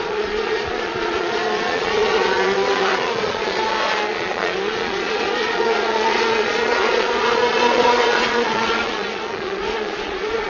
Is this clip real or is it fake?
fake